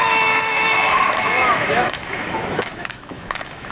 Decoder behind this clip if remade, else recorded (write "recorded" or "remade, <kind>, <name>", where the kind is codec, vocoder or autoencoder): remade, autoencoder, DAC-VAE